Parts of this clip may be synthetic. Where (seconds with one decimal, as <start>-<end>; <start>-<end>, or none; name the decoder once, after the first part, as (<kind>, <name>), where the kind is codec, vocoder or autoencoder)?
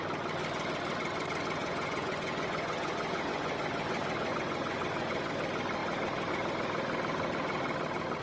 1.6-5.3 (vocoder, Vocos)